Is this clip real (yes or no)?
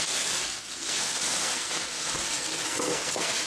no